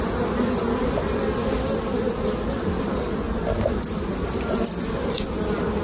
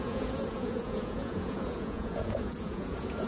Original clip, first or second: first